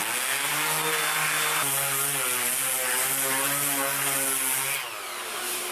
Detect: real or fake real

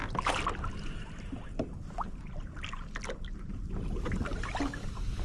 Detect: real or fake real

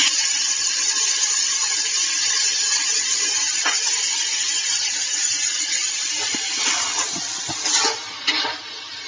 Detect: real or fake real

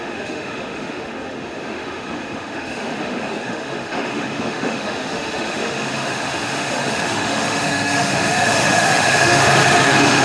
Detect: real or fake fake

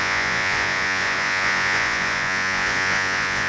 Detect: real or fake fake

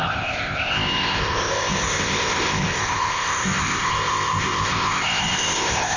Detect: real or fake fake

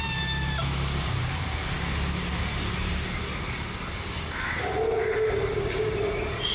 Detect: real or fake real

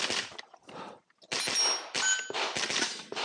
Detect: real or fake real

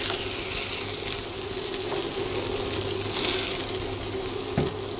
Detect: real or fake real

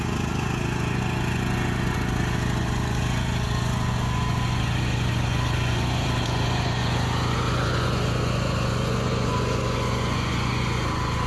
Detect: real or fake fake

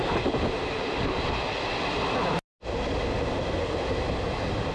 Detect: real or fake real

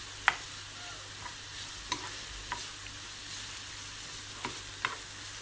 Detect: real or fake real